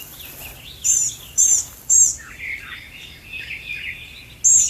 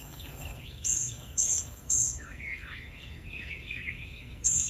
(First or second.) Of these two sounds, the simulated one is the second